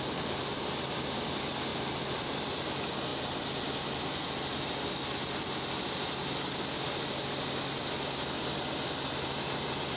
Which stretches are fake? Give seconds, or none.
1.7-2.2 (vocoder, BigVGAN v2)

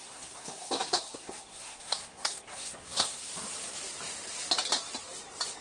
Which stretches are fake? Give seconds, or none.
0.0-3.3 (codec, SNAC)

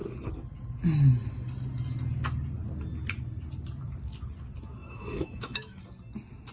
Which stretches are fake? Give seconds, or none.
4.8-5.8 (autoencoder, DAC-VAE)

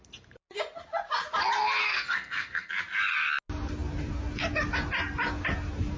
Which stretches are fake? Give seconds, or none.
1.8-2.7 (codec, SNAC)

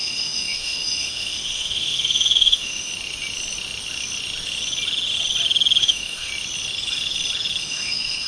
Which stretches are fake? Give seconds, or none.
0.0-2.9 (autoencoder, DAC-VAE); 5.8-6.3; 7.6-8.3